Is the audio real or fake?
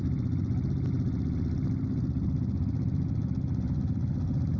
real